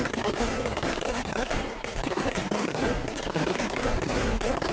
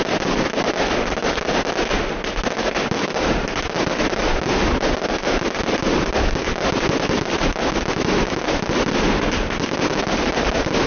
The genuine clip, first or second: second